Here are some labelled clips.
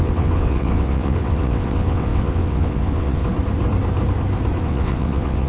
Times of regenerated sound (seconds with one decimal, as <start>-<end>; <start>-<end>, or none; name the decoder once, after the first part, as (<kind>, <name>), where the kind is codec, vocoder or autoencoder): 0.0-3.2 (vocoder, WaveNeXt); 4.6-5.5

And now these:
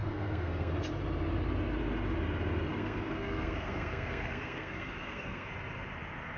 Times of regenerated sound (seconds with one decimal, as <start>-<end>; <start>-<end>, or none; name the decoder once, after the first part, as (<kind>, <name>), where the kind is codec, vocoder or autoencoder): 0.0-0.7 (codec, SNAC); 2.7-5.5

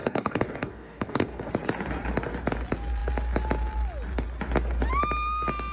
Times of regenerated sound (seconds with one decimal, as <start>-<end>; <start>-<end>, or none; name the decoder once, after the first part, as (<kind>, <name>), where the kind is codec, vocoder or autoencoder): 0.0-1.5 (codec, DAC)